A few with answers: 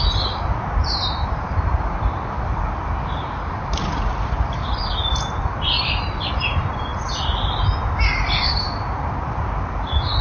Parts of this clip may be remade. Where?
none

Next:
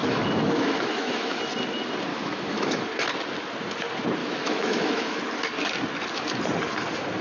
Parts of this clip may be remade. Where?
0.0-1.4 (autoencoder, DAC-VAE); 2.1-2.9; 4.2-5.2

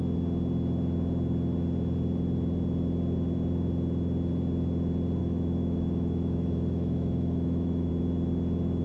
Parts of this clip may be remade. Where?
5.2-7.9 (autoencoder, DAC-VAE)

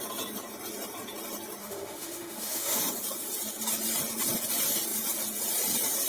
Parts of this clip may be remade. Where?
1.6-2.8 (autoencoder, DAC-VAE)

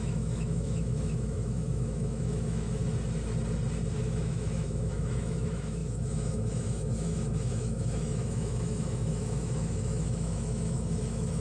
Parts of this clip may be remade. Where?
0.0-2.8 (autoencoder, DAC-VAE); 4.0-11.4

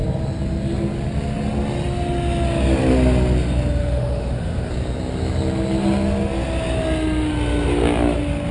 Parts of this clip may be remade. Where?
3.8-4.7 (autoencoder, DAC-VAE)